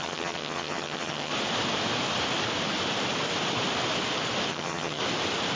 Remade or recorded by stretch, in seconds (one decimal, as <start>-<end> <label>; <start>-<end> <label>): 0.0-1.3 remade; 1.3-4.5 recorded; 4.5-5.0 remade; 5.0-5.6 recorded